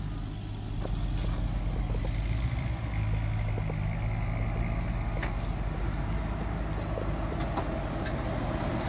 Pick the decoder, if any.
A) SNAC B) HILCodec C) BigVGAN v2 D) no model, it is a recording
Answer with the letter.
D